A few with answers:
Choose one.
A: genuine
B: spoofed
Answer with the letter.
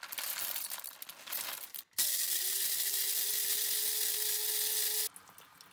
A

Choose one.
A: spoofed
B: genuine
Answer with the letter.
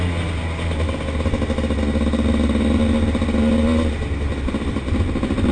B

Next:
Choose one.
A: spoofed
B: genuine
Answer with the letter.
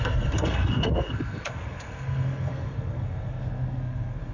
A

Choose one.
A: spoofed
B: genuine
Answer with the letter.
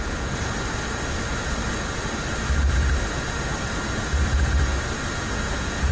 B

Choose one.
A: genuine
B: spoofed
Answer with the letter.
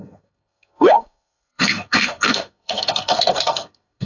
B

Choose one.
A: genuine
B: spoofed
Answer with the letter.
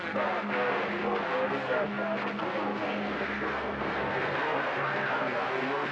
B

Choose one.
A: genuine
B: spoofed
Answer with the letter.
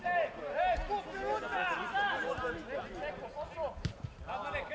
A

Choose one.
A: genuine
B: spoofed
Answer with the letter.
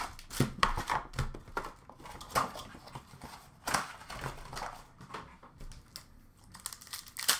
A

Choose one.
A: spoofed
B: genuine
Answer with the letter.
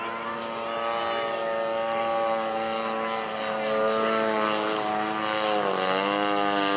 B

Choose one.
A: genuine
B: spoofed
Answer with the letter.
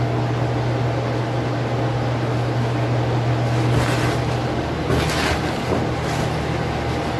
A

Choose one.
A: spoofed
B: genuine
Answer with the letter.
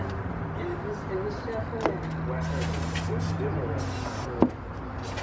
B